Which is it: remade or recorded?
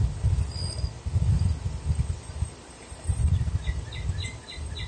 recorded